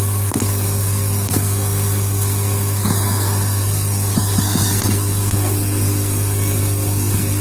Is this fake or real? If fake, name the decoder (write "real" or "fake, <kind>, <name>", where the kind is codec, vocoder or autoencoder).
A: fake, codec, SNAC